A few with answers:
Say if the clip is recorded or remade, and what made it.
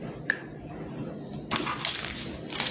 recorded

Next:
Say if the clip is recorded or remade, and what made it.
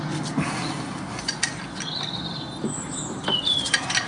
recorded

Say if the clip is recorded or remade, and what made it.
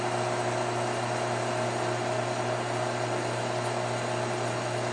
recorded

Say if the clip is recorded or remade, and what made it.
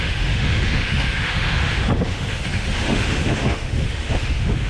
remade, autoencoder, DAC-VAE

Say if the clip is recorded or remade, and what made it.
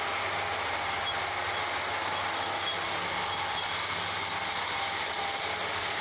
recorded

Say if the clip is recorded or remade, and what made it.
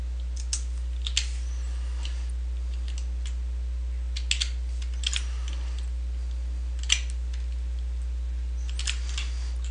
recorded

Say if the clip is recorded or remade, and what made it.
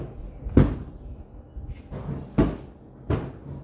recorded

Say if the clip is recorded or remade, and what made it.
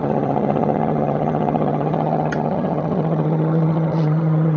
remade, vocoder, HiFi-GAN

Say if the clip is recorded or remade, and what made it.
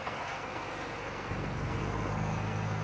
remade, codec, SNAC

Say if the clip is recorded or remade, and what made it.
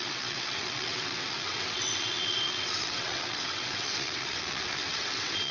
remade, vocoder, WaveNeXt